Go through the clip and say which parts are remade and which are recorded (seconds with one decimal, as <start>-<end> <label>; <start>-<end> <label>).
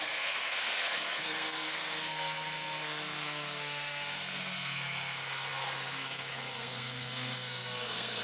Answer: 0.0-8.2 remade